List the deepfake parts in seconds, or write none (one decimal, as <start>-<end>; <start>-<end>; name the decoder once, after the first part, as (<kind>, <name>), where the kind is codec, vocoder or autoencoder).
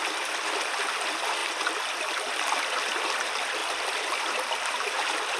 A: 3.6-4.3 (vocoder, BigVGAN v2)